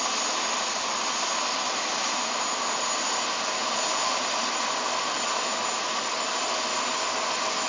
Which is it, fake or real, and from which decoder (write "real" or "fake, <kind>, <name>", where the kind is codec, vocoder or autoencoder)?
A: real